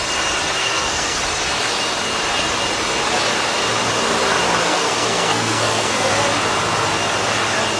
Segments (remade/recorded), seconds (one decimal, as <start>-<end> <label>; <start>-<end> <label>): 0.0-0.6 recorded; 0.6-1.2 remade; 1.2-4.6 recorded; 4.6-6.1 remade; 6.1-7.8 recorded

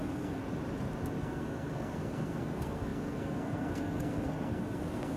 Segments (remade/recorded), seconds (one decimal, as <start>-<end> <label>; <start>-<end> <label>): 0.0-0.4 remade; 0.4-1.2 recorded; 1.2-5.2 remade

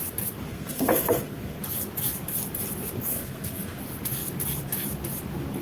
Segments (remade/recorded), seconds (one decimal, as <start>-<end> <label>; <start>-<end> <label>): 0.0-0.5 recorded; 0.5-1.6 remade; 1.6-3.1 recorded; 3.1-3.8 remade; 3.8-5.6 recorded

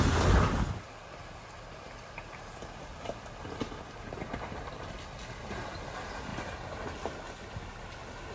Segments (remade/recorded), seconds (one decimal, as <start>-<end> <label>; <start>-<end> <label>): 0.0-8.3 recorded

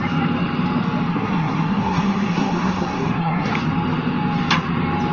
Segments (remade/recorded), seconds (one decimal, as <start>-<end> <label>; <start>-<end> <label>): 0.0-1.1 recorded; 1.1-3.5 remade; 3.5-5.1 recorded

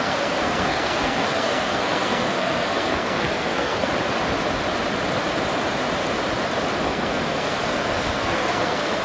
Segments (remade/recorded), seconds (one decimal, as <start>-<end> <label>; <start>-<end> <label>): 0.0-3.9 remade; 3.9-6.8 recorded; 6.8-9.0 remade